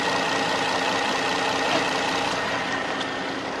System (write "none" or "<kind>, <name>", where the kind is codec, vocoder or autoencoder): none